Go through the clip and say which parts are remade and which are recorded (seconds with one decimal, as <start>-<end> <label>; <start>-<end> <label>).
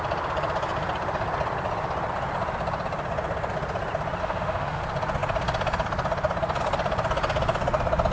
0.0-4.2 recorded; 4.2-4.8 remade; 4.8-8.1 recorded